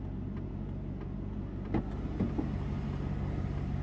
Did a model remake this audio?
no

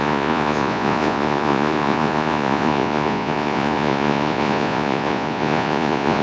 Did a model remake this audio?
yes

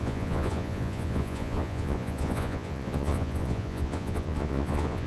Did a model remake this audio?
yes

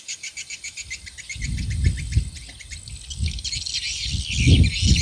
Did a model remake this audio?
no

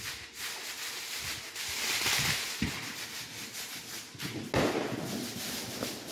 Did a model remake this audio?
no